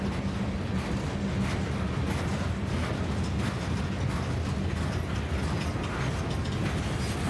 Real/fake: real